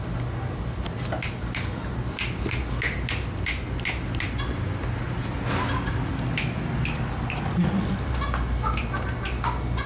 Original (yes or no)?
yes